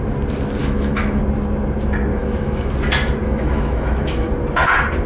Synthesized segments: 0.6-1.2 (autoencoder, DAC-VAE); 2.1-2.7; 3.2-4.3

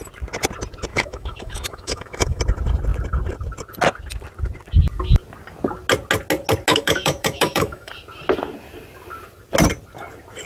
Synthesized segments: 0.9-2.4 (autoencoder, DAC-VAE); 6.7-7.9

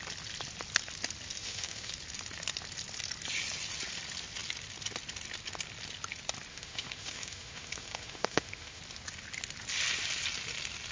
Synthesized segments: 1.4-1.9 (autoencoder, DAC-VAE); 6.5-8.8